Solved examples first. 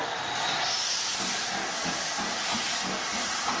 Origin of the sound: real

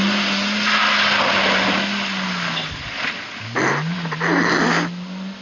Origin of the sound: real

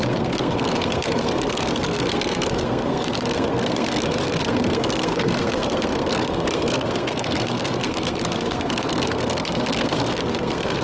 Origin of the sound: fake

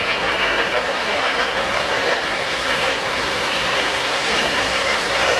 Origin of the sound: fake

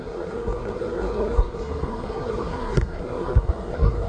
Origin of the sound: fake